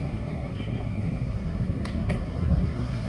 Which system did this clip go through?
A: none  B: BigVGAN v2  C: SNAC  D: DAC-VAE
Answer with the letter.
C